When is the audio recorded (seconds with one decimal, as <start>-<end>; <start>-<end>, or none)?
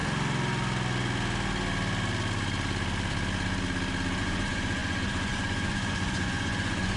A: 0.0-4.2